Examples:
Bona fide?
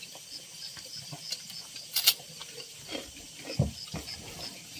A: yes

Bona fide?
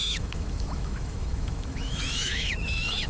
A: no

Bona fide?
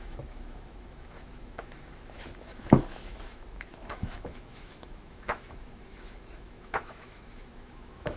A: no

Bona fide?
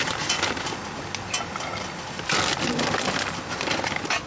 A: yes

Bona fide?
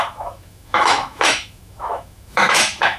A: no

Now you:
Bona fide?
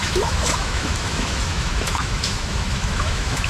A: no